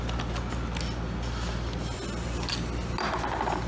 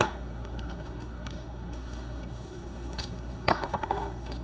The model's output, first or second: second